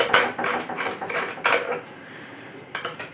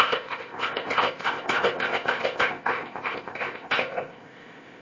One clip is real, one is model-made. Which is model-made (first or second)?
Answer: second